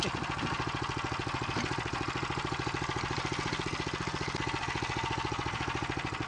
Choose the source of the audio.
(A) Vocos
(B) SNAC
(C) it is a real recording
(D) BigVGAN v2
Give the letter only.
C